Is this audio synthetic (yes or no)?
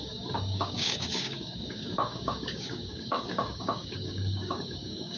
yes